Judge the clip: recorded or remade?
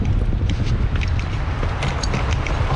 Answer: recorded